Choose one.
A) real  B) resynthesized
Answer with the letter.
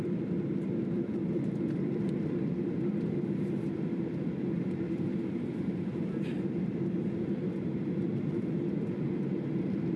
B